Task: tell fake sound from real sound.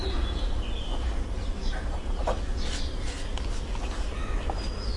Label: real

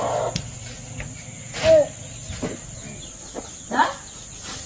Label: real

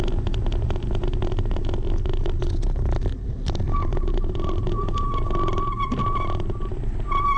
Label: real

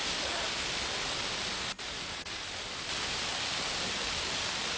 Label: real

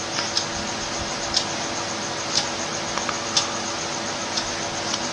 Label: real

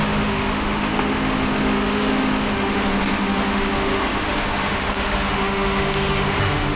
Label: fake